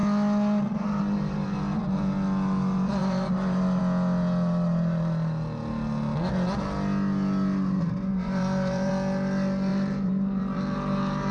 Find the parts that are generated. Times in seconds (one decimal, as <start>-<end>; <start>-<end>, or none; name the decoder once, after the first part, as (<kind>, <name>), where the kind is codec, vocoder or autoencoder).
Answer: 3.0-3.8 (vocoder, BigVGAN v2); 8.1-8.9; 9.7-11.3